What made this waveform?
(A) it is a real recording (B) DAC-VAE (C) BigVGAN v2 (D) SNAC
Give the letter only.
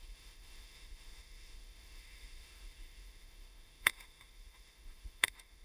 B